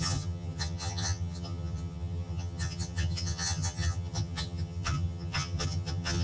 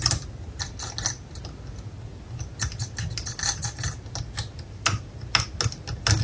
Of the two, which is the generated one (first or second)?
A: first